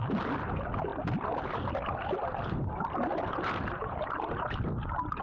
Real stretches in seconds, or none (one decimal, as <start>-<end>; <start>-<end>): 0.0-5.2